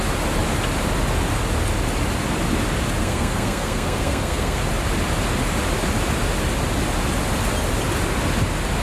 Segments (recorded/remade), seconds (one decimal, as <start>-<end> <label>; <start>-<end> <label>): 0.0-3.0 recorded; 3.0-4.6 remade; 4.6-8.8 recorded